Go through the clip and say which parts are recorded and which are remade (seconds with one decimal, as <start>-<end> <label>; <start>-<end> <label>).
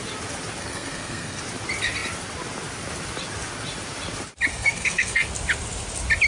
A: 0.0-0.6 recorded; 0.6-1.4 remade; 1.4-4.5 recorded; 4.5-5.3 remade; 5.3-6.3 recorded